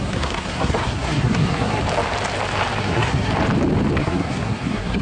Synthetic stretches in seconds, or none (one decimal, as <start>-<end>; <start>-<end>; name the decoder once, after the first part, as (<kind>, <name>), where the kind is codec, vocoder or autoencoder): 0.0-1.8 (codec, SNAC); 2.8-3.3; 4.0-5.0